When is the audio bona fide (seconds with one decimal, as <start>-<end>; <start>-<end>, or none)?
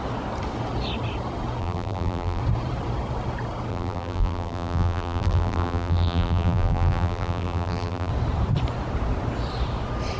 0.0-1.6; 2.4-3.7; 8.1-10.2